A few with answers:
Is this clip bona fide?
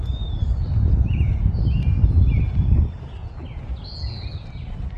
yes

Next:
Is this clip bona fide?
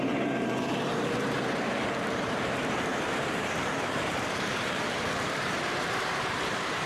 no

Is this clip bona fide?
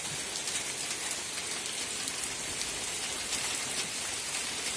yes